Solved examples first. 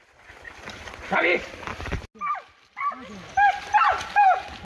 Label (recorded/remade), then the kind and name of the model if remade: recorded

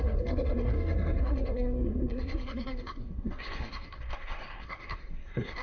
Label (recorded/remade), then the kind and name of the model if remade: remade, codec, SNAC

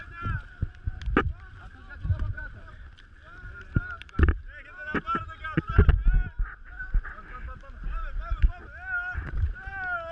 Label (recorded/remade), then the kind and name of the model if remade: recorded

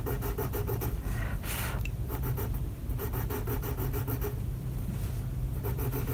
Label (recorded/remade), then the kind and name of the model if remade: recorded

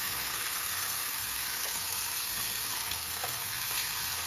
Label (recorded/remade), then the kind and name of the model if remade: remade, codec, SNAC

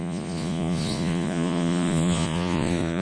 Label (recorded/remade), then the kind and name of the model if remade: remade, vocoder, Vocos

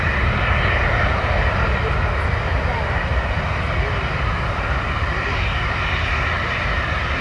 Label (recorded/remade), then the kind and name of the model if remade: recorded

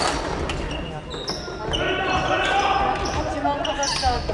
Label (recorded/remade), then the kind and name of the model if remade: recorded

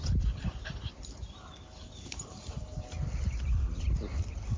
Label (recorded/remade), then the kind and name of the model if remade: recorded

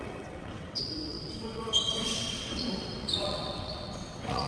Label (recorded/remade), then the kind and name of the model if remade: remade, vocoder, WaveNeXt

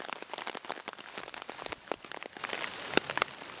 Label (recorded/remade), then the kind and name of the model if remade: recorded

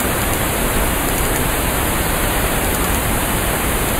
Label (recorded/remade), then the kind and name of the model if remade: remade, vocoder, BigVGAN v2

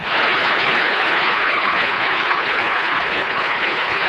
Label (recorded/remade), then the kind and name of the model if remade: remade, codec, HILCodec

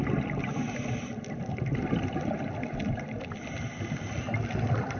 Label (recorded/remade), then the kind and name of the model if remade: recorded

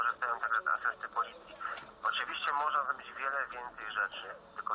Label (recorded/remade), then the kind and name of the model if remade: recorded